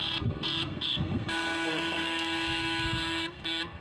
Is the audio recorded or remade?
remade